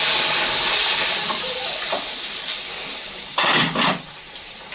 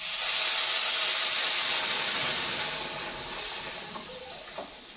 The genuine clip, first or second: second